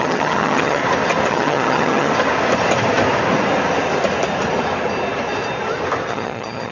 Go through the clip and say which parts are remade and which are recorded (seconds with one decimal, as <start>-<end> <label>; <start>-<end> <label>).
0.0-0.8 remade; 0.8-1.3 recorded; 1.3-2.1 remade; 2.1-6.1 recorded; 6.1-6.7 remade